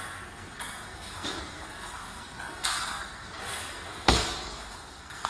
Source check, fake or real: fake